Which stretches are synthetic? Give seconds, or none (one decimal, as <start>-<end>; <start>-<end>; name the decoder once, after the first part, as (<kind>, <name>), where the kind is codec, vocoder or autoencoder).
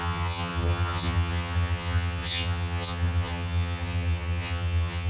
0.0-5.1 (vocoder, HiFi-GAN)